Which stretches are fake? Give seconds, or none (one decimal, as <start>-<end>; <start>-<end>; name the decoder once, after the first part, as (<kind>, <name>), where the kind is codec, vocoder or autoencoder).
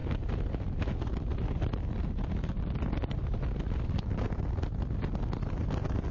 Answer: none